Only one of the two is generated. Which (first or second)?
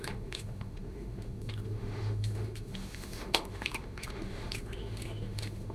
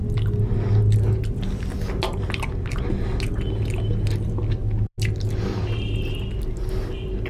first